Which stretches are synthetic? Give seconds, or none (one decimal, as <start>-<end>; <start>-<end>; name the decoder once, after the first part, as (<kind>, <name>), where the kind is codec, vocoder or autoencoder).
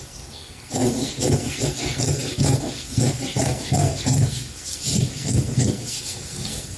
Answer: 0.0-6.8 (codec, SNAC)